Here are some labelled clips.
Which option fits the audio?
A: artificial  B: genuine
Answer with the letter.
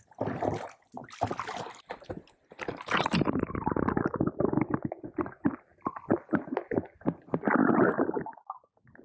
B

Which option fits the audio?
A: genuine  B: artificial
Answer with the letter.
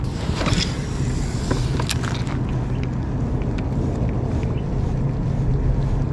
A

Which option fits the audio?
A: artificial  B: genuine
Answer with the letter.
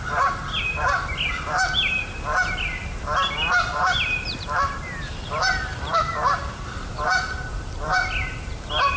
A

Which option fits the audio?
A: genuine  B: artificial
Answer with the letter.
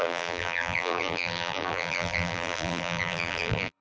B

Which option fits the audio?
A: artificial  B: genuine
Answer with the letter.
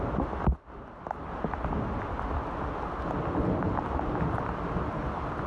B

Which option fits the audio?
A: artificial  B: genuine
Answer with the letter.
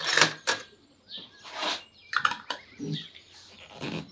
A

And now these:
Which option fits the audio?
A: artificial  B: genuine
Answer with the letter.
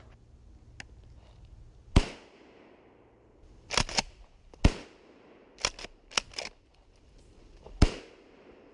B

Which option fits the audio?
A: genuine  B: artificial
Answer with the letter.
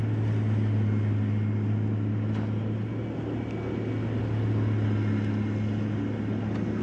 A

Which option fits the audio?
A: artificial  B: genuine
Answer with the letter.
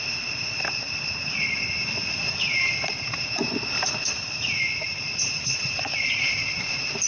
A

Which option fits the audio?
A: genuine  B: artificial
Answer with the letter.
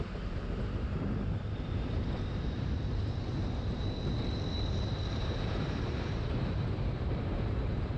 B